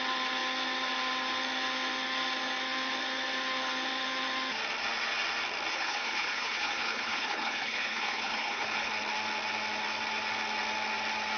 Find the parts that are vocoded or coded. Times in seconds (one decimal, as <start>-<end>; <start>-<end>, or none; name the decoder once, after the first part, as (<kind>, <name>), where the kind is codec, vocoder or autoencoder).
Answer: 5.7-8.9 (codec, HILCodec)